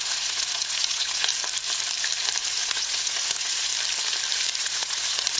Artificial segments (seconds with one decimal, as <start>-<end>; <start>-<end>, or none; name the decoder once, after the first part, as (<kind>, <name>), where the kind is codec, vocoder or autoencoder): 0.0-1.3 (vocoder, Vocos); 2.5-3.7; 4.6-5.4